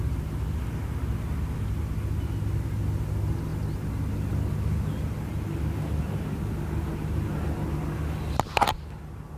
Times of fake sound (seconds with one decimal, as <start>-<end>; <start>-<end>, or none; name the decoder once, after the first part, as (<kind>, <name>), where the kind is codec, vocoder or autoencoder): none